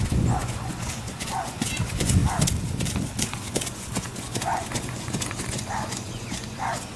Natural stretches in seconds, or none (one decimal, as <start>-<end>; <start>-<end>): 2.2-3.2